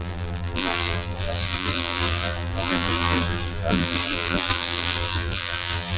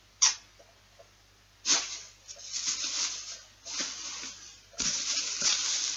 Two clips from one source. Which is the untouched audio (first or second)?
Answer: second